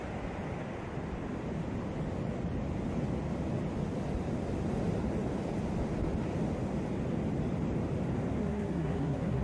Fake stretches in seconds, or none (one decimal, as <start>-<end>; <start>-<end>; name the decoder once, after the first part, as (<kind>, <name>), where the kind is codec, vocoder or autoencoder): 8.4-9.4 (codec, SNAC)

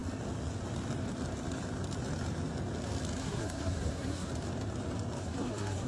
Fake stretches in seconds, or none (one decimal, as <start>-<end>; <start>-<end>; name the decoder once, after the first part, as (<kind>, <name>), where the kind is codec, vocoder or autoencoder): 3.2-4.3 (codec, SNAC); 5.2-5.9